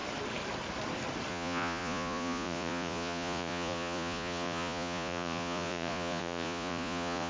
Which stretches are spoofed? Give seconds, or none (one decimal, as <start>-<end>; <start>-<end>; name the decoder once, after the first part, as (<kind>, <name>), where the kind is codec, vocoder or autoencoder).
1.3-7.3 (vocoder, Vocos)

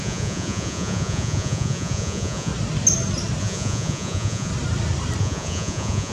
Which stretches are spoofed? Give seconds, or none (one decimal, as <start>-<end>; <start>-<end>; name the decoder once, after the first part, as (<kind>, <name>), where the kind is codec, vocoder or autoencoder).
0.0-2.5 (vocoder, Vocos); 3.4-4.5; 5.2-6.1

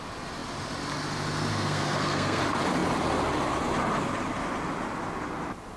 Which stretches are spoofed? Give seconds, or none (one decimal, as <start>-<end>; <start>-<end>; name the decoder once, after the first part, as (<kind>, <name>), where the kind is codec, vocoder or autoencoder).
1.5-2.4 (codec, SNAC)

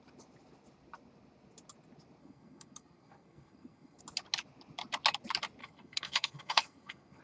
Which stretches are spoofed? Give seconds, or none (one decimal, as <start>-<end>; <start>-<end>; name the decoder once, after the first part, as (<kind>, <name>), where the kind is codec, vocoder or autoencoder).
2.2-4.0 (codec, SNAC); 5.6-7.2